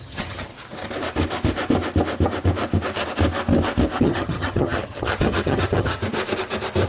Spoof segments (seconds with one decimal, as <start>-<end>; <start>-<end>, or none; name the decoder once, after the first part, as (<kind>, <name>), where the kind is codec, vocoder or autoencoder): 0.0-0.5 (vocoder, HiFi-GAN); 4.0-6.0